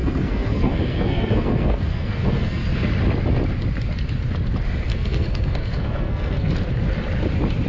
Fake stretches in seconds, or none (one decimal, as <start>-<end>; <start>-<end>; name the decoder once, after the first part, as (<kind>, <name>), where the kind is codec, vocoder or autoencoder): 0.0-2.9 (codec, SNAC); 4.9-6.5